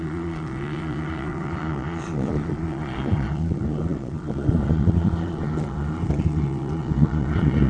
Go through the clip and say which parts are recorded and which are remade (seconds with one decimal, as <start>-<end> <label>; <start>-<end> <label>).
0.0-7.7 remade